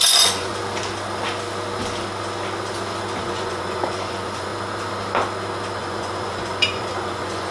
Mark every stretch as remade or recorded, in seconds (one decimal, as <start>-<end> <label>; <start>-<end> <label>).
0.0-0.5 remade; 0.5-3.2 recorded; 3.2-4.5 remade; 4.5-5.8 recorded; 5.8-7.5 remade